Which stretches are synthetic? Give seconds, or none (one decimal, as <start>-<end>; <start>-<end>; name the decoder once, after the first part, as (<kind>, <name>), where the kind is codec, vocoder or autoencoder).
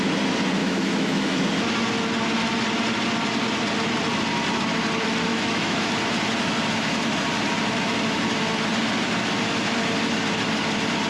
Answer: 0.6-1.4 (autoencoder, DAC-VAE); 5.3-5.9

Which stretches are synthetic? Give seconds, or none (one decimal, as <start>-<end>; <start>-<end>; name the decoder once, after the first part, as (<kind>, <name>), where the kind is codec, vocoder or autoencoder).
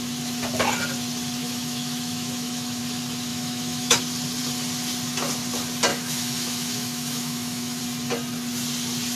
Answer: 1.4-2.8 (autoencoder, DAC-VAE); 3.3-4.0; 5.9-7.8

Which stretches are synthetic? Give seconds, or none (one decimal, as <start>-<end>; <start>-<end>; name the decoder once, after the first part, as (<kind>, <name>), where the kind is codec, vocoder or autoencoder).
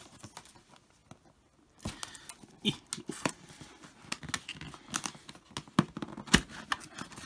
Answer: none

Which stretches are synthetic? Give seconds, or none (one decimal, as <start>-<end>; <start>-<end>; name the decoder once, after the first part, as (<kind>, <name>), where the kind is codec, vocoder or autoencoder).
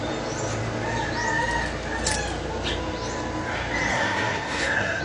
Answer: 3.9-5.0 (codec, SNAC)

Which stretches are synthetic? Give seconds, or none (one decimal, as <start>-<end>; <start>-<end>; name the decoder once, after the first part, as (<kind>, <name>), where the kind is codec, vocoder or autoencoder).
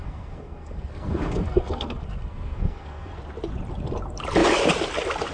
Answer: 0.0-3.2 (codec, SNAC)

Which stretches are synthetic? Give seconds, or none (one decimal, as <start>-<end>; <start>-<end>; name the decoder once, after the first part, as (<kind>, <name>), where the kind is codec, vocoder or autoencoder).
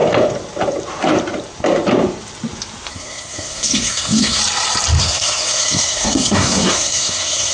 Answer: 2.9-4.4 (codec, SNAC); 5.0-7.5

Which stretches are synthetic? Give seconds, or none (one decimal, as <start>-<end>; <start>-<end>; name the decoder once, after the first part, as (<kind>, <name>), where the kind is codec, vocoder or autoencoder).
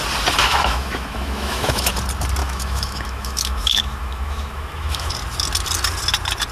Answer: 0.4-1.9 (autoencoder, DAC-VAE); 2.4-5.1